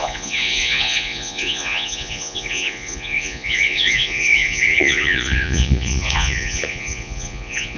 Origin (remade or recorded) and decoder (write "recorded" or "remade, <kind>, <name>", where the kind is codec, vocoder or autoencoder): remade, vocoder, Vocos